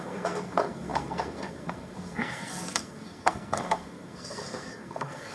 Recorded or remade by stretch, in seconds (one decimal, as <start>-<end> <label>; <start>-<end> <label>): 0.0-5.3 remade